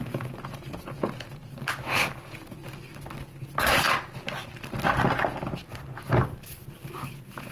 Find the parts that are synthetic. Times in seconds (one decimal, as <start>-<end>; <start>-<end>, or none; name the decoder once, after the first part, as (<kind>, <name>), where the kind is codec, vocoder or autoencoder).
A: 0.0-1.4 (vocoder, Vocos); 2.2-2.6; 7.1-7.5